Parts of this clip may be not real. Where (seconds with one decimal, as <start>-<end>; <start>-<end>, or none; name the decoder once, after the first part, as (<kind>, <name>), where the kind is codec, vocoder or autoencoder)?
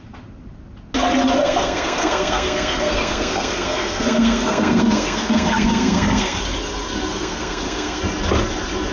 1.4-6.4 (codec, SNAC); 7.1-8.0